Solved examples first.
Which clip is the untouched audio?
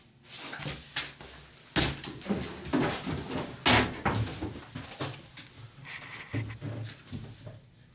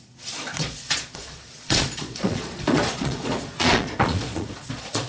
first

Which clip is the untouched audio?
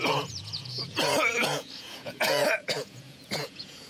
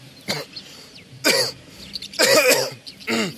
second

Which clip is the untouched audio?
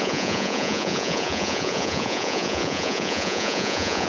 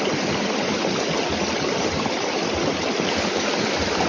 second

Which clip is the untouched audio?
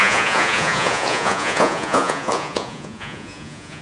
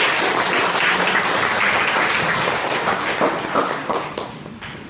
second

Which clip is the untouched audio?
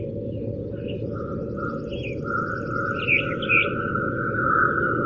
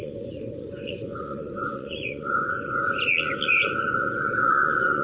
first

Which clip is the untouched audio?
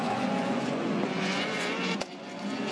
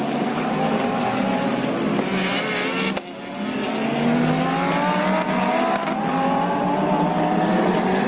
second